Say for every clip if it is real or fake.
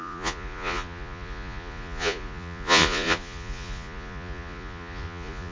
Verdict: fake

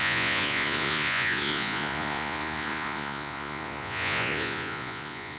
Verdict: fake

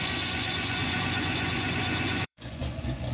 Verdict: fake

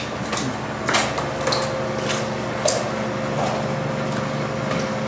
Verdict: real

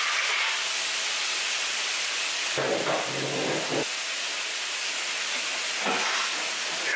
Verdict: real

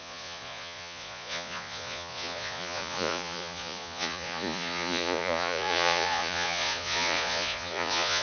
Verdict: fake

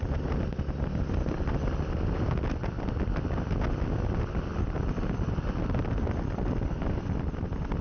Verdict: real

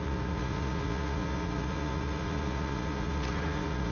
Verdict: fake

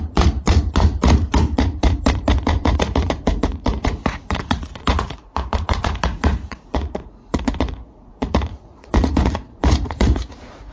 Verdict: fake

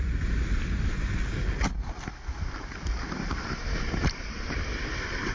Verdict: real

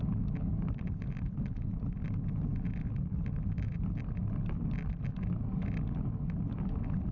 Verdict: real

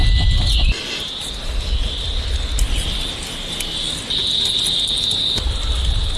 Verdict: real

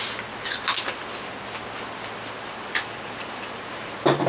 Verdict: real